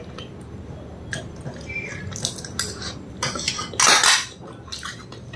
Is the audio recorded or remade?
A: recorded